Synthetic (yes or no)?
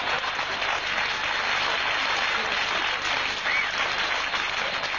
no